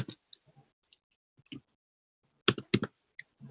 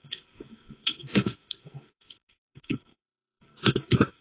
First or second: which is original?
first